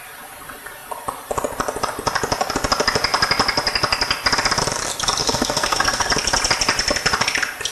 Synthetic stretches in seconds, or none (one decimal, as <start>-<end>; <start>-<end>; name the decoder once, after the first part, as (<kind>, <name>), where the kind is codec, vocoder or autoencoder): 5.2-6.1 (codec, SNAC)